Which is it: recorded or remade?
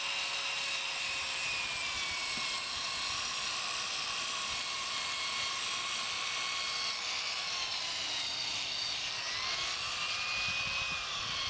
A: recorded